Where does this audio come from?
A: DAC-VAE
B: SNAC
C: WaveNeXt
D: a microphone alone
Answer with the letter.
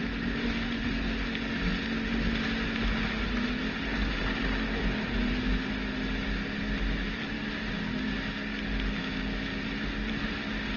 D